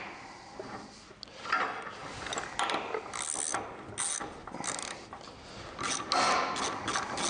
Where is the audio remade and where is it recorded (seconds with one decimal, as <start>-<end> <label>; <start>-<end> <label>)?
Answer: 0.0-7.3 recorded